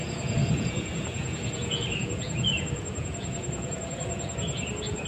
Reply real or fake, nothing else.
fake